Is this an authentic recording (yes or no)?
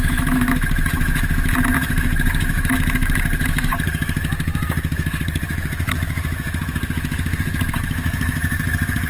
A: no